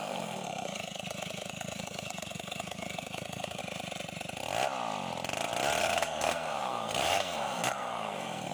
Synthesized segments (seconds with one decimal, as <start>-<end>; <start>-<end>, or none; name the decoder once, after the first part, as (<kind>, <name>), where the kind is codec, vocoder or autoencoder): 0.0-3.6 (codec, SNAC); 5.8-8.5